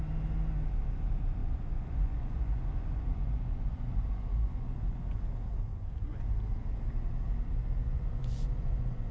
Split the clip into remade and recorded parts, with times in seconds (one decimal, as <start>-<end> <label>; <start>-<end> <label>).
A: 0.0-1.4 recorded; 1.4-5.2 remade; 5.2-5.7 recorded; 5.7-6.2 remade; 6.2-7.8 recorded; 7.8-9.1 remade